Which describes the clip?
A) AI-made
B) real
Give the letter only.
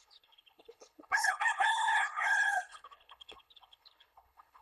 A